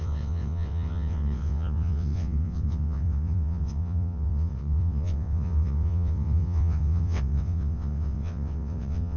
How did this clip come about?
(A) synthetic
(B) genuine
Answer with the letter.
A